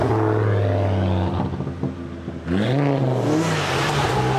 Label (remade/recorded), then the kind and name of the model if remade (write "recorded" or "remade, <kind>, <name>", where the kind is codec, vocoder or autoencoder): recorded